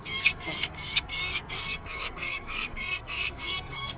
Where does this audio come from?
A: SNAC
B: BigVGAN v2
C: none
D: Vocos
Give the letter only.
A